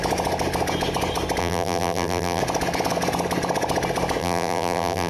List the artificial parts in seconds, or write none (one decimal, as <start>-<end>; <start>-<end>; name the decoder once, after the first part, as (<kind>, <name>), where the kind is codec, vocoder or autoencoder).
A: 1.4-2.4 (vocoder, BigVGAN v2); 4.2-5.1